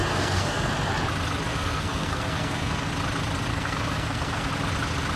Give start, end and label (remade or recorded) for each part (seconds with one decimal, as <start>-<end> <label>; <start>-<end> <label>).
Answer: 0.0-0.7 remade; 0.7-1.5 recorded; 1.5-2.9 remade; 2.9-3.5 recorded; 3.5-4.5 remade; 4.5-5.2 recorded